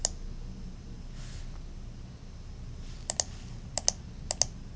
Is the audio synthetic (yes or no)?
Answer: no